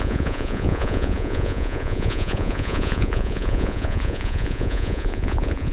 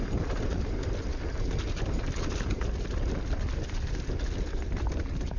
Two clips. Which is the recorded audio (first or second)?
second